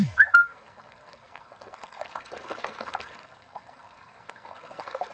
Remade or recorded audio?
remade